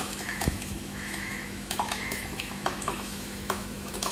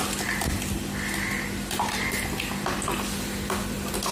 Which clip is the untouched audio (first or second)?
second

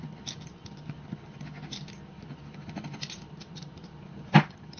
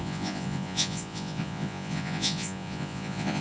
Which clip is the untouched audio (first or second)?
first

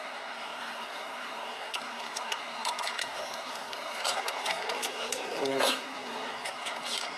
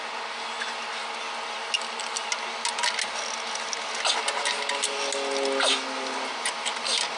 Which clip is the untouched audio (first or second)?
second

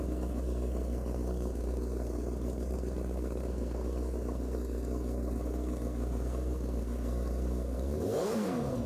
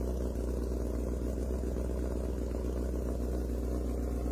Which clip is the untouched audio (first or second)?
second